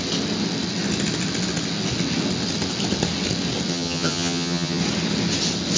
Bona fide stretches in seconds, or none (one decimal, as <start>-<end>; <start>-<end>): 0.0-3.7; 4.8-5.8